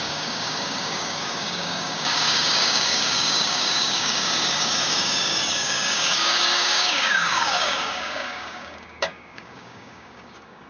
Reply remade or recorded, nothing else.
remade